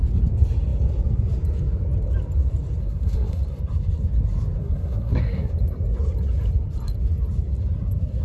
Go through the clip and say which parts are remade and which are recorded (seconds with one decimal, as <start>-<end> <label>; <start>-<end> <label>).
0.0-2.8 recorded; 2.8-3.4 remade; 3.4-4.6 recorded; 4.6-5.5 remade; 5.5-8.2 recorded